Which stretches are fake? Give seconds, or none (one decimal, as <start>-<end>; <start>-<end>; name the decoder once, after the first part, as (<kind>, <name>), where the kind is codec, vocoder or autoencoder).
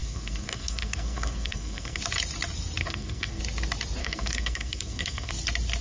0.0-2.0 (codec, SNAC); 2.8-3.4; 4.0-5.3